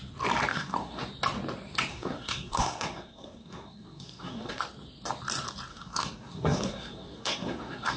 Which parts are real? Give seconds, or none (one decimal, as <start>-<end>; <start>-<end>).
0.0-0.5; 1.0-1.9; 4.6-5.7

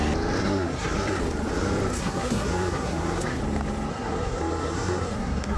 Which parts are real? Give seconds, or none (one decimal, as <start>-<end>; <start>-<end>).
0.0-0.4; 1.2-1.9; 3.4-3.9

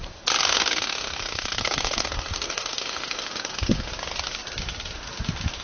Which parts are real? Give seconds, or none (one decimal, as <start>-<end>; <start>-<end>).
0.0-0.5; 3.9-5.6

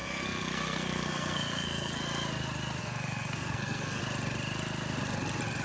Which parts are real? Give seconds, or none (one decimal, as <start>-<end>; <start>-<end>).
2.0-2.8; 4.0-5.6

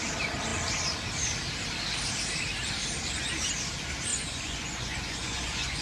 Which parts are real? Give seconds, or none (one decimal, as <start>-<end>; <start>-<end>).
0.0-4.1